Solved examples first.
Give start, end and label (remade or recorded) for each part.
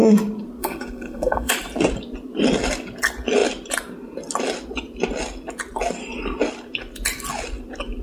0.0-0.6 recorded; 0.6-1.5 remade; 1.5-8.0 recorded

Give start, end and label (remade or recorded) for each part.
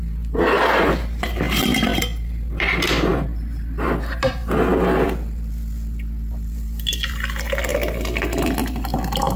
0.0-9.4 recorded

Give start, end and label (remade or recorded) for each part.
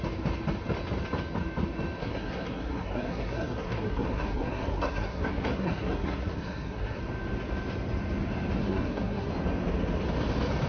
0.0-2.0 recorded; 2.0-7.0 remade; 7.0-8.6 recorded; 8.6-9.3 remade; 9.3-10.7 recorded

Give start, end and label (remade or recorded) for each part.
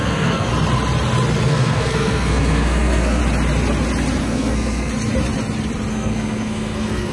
0.0-0.5 remade; 0.5-1.4 recorded; 1.4-3.2 remade; 3.2-4.2 recorded; 4.2-4.9 remade; 4.9-5.9 recorded; 5.9-7.1 remade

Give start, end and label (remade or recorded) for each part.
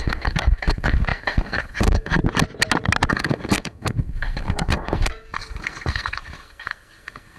0.0-2.2 remade; 2.2-3.1 recorded; 3.1-7.4 remade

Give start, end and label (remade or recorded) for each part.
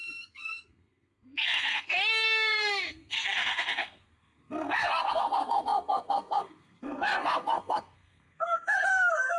0.0-9.4 remade